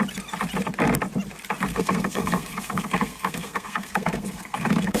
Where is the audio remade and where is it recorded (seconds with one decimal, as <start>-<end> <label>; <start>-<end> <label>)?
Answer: 0.0-1.7 recorded; 1.7-5.0 remade